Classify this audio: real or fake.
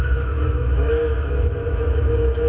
fake